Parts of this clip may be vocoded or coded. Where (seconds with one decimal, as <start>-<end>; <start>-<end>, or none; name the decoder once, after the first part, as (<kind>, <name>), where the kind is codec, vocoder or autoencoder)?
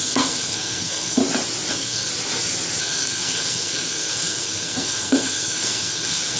0.0-1.2 (codec, SNAC); 1.7-2.1; 2.8-6.4